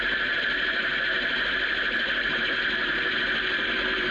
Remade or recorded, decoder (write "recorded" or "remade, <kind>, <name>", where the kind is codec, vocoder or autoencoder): recorded